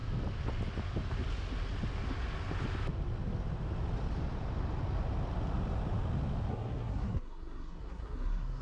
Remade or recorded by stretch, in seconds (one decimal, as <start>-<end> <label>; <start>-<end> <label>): 0.0-6.5 recorded; 6.5-8.6 remade